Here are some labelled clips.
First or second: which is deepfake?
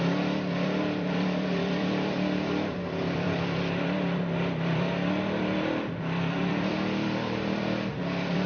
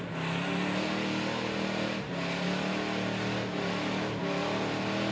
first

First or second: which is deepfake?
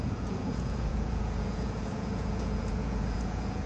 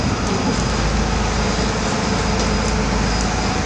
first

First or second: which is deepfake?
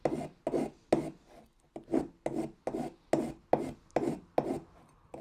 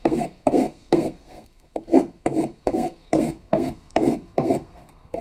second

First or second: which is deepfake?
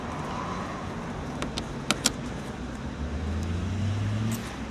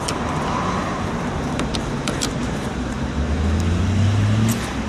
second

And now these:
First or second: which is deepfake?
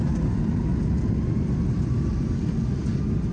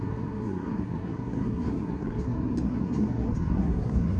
second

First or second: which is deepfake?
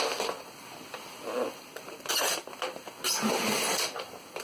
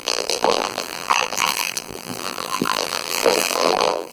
second